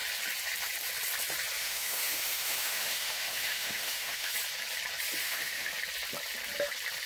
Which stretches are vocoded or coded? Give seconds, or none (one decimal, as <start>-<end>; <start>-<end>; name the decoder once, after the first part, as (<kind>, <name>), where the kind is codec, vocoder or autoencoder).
1.6-4.3 (autoencoder, DAC-VAE); 5.2-5.7